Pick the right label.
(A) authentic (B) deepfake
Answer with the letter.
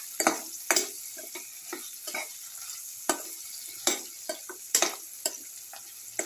A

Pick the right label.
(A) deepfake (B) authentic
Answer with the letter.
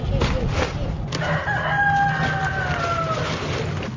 B